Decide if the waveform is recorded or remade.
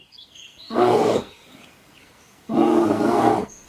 remade